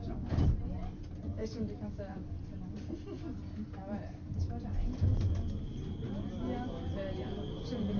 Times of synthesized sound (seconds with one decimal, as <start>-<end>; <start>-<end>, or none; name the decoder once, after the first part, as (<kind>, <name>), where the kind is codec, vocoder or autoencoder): none